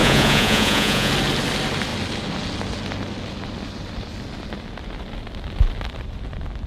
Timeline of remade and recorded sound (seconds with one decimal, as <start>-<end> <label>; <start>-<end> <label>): 0.0-1.1 remade; 1.1-6.7 recorded